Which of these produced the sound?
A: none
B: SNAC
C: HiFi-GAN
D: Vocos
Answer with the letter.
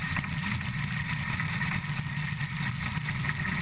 A